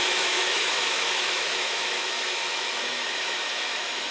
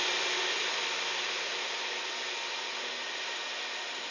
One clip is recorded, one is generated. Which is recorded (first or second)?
second